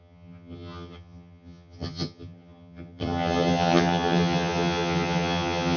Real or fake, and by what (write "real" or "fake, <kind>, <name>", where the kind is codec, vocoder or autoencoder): fake, vocoder, HiFi-GAN